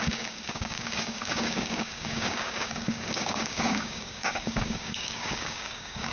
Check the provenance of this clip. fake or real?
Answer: fake